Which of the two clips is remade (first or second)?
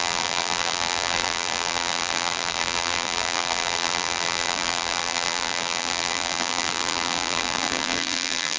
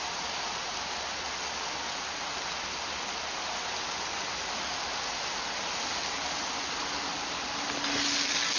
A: first